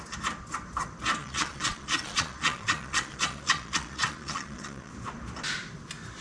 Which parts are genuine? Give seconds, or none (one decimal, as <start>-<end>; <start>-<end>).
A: 0.0-1.2; 4.9-6.2